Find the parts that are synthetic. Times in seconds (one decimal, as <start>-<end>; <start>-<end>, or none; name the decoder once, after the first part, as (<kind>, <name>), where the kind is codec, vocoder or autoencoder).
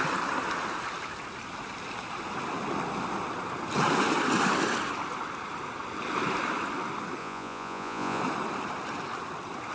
7.2-8.2 (vocoder, Vocos)